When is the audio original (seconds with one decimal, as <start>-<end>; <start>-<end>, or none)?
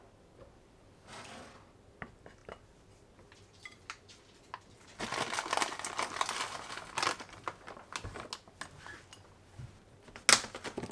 0.0-10.9